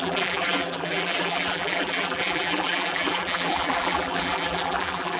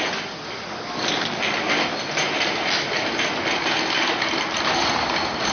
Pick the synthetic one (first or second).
first